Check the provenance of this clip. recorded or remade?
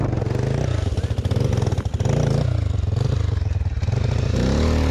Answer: recorded